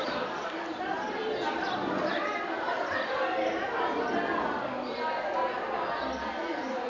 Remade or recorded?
recorded